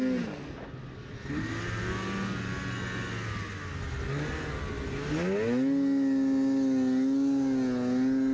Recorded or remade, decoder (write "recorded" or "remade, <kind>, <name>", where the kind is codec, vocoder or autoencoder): recorded